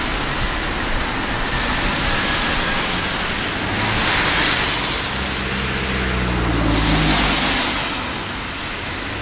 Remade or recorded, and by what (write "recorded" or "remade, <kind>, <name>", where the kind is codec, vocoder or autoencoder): recorded